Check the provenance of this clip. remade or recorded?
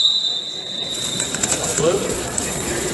remade